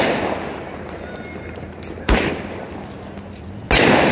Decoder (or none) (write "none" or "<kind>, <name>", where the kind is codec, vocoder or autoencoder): none